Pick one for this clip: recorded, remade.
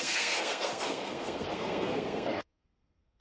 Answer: remade